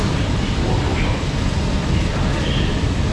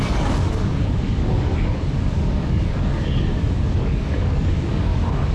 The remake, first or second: second